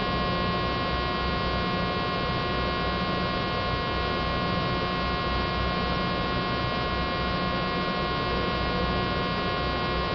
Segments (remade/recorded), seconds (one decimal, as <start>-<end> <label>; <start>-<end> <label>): 0.0-10.1 recorded